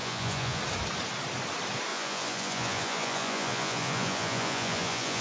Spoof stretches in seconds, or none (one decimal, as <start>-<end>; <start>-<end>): 0.0-0.6; 1.9-5.2